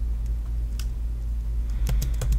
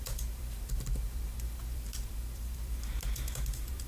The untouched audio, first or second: first